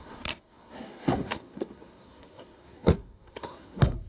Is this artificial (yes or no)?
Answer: yes